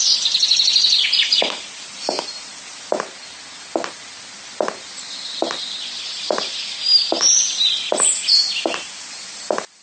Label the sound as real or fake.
real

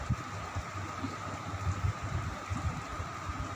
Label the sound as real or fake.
real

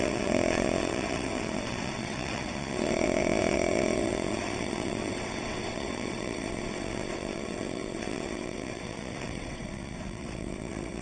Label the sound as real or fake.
fake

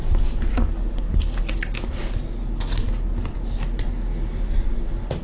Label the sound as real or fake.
real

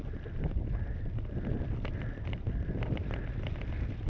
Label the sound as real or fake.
real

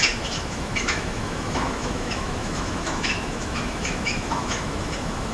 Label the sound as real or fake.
fake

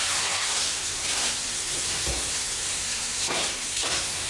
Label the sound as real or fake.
fake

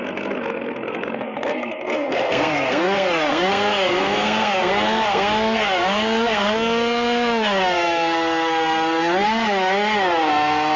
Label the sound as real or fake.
fake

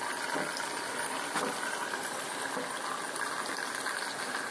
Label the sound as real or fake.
real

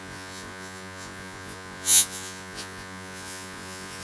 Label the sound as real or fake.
fake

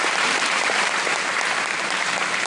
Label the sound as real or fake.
fake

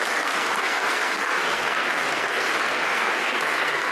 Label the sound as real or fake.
fake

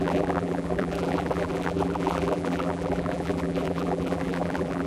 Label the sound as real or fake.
fake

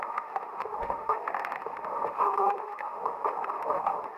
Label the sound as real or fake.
fake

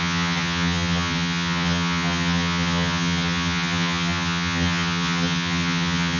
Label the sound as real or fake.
fake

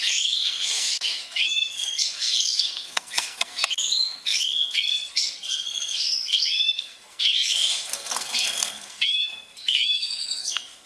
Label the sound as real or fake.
fake